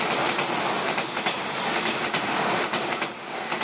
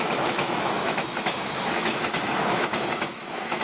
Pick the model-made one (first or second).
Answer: second